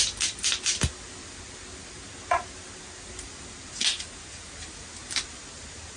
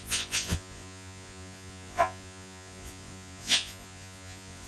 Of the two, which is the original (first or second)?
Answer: first